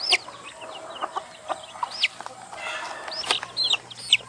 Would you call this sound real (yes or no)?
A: yes